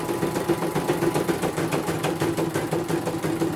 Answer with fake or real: real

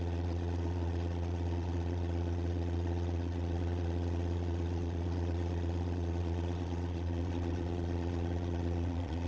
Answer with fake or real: fake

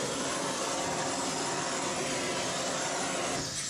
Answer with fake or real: real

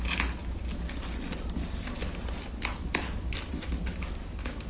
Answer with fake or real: real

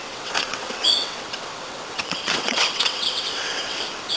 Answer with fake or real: fake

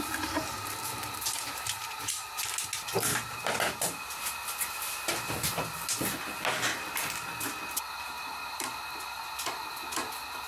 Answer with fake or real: real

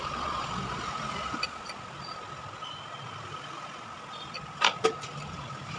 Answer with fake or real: real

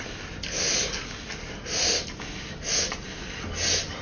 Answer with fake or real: real